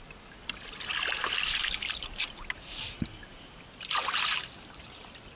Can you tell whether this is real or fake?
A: fake